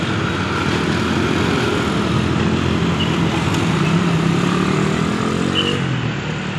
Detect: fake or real real